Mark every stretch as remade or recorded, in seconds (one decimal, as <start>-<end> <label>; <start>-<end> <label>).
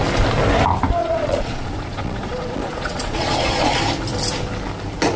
0.0-1.0 recorded; 1.0-3.7 remade; 3.7-5.2 recorded